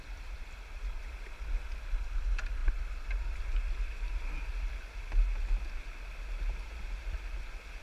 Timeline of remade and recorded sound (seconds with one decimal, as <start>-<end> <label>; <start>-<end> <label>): 0.0-7.8 recorded

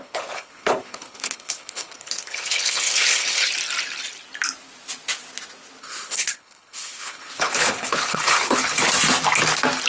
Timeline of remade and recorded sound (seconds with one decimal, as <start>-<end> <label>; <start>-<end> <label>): 0.0-3.5 remade; 3.5-5.8 recorded; 5.8-8.8 remade; 8.8-9.9 recorded

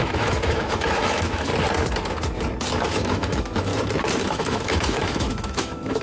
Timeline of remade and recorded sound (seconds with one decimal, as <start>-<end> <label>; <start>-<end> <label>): 0.0-1.5 remade; 1.5-2.8 recorded; 2.8-3.7 remade; 3.7-4.2 recorded; 4.2-6.0 remade

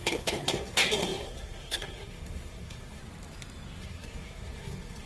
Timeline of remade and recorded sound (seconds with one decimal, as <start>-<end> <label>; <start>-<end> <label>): 0.0-3.0 remade; 3.0-3.8 recorded; 3.8-5.1 remade

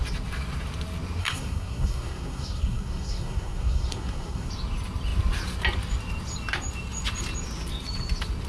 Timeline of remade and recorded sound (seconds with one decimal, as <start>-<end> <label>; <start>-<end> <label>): 0.0-1.2 recorded; 1.2-4.5 remade; 4.5-8.5 recorded

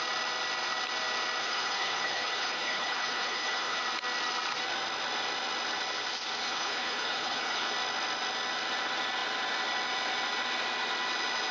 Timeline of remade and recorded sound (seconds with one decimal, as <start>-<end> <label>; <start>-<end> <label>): 0.0-1.4 recorded; 1.4-3.8 remade; 3.8-6.4 recorded; 6.4-7.7 remade; 7.7-11.5 recorded

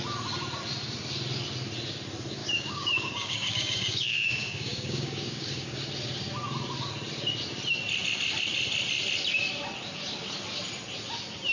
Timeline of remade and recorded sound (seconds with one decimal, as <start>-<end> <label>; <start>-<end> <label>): 0.0-2.4 recorded; 2.4-5.9 remade; 5.9-11.5 recorded